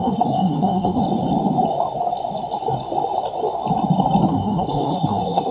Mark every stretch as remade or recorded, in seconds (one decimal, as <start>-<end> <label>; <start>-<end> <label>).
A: 0.0-1.0 remade; 1.0-4.3 recorded; 4.3-5.5 remade